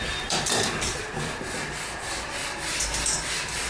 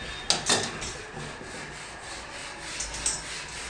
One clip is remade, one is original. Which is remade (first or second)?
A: first